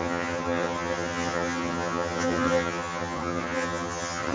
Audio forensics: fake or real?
fake